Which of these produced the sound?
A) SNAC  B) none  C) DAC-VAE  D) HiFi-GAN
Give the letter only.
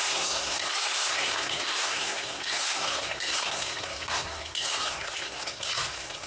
A